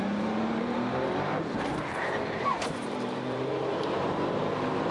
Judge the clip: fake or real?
fake